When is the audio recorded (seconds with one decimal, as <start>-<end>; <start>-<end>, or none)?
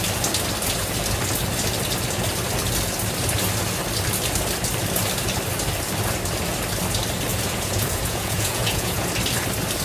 0.0-7.3; 9.0-9.8